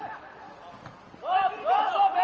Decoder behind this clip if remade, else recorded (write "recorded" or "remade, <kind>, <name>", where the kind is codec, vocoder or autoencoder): recorded